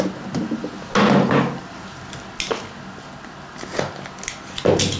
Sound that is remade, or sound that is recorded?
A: recorded